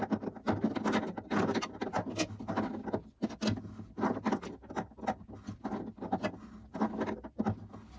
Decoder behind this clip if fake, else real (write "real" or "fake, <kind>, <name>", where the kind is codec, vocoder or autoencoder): real